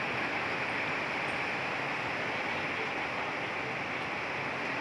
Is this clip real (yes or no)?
yes